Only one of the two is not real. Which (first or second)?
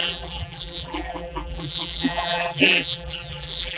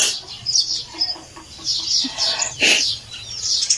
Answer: first